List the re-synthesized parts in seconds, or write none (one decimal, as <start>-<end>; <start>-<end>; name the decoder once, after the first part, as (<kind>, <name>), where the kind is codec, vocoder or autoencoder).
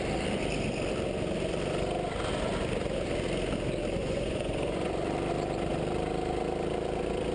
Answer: 4.0-4.9 (vocoder, Vocos)